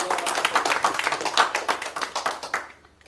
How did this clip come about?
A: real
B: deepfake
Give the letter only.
A